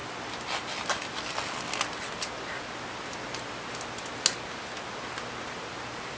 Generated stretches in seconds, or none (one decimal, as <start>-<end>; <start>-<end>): none